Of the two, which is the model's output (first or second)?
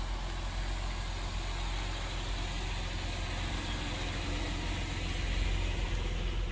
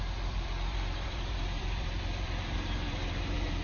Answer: second